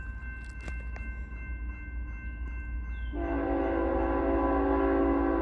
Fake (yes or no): no